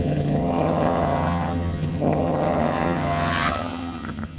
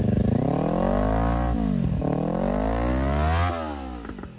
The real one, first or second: second